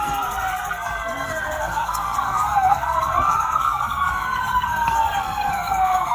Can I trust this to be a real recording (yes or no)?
no